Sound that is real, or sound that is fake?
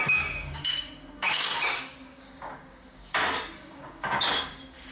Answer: fake